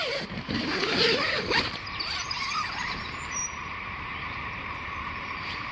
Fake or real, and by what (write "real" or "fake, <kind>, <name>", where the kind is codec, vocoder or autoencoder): fake, vocoder, BigVGAN v2